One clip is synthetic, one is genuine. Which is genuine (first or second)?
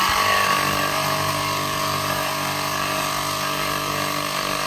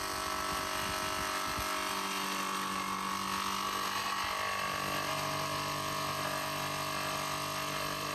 second